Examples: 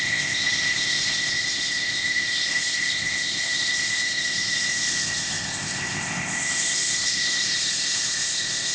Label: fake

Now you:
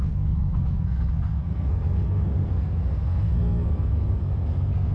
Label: fake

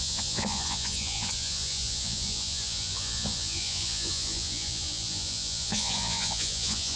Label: fake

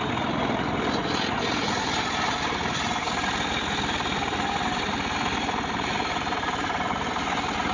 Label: real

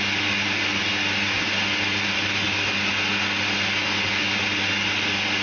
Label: real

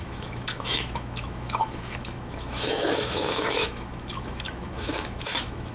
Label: fake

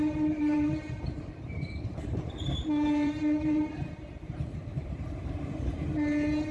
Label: fake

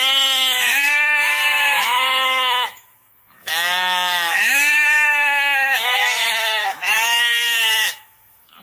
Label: fake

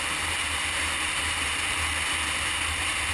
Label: real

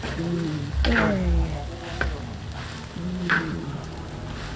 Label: real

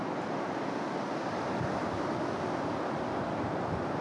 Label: real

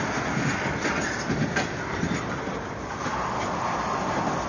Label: real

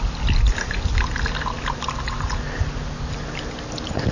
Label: real